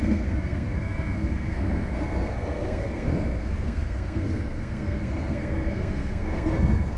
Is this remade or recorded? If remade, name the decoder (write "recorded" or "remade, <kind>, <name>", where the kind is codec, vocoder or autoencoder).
remade, codec, SNAC